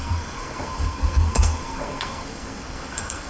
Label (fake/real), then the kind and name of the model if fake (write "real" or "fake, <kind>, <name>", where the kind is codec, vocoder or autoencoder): fake, codec, SNAC